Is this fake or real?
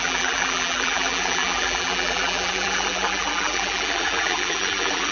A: fake